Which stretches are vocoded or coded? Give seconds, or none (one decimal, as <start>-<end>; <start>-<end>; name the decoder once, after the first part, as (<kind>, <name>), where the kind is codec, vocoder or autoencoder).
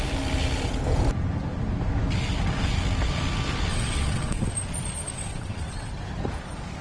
3.7-4.5 (vocoder, WaveNeXt); 5.1-5.9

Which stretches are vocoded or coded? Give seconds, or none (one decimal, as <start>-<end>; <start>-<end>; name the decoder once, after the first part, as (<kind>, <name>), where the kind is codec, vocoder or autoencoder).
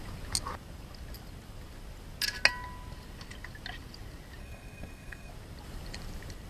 4.4-5.3 (codec, SNAC)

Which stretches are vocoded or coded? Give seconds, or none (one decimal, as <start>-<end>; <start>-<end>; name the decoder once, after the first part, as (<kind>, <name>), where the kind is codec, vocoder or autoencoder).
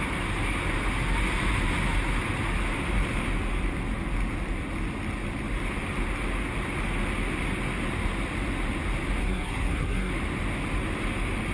9.2-10.1 (codec, SNAC)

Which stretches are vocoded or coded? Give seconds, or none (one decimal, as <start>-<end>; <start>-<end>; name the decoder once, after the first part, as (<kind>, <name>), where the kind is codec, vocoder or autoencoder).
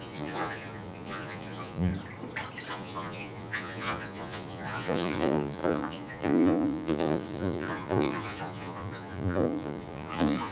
0.0-1.9 (vocoder, Vocos); 2.7-10.5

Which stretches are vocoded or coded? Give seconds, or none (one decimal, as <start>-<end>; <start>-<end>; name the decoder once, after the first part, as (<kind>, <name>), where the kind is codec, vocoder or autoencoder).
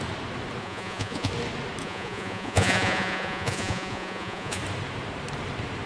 0.6-1.3 (vocoder, Vocos); 1.8-4.6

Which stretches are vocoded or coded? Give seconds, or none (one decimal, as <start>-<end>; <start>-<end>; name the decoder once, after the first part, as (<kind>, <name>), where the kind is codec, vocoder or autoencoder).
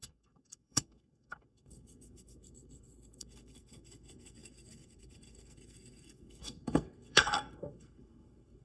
0.0-8.6 (codec, SNAC)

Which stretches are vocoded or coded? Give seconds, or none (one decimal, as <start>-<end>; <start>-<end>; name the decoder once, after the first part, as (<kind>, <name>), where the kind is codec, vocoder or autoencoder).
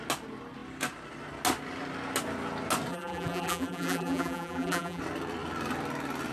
2.9-5.0 (vocoder, BigVGAN v2)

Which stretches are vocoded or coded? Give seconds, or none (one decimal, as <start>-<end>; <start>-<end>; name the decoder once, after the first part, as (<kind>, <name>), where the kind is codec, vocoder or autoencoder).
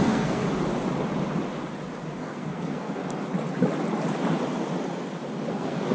0.0-0.4 (codec, SNAC); 2.2-3.0; 5.5-5.9